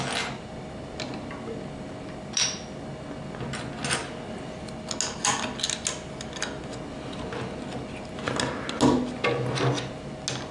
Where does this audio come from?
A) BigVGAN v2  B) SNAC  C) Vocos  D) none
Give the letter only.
D